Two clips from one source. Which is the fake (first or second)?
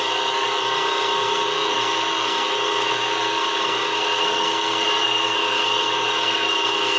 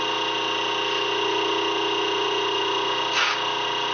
first